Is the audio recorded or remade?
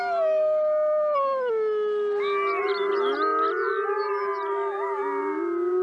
recorded